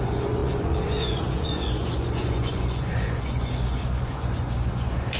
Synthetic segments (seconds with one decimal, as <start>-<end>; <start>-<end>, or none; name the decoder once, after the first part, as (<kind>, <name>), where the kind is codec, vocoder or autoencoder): 0.0-5.2 (vocoder, Vocos)